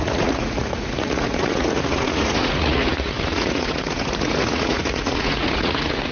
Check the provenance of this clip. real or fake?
fake